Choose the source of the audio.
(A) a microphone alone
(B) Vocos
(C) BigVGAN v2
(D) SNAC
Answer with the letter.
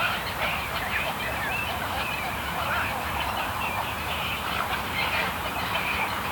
C